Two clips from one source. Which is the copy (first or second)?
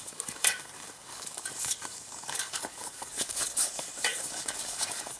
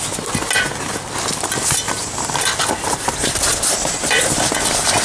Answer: first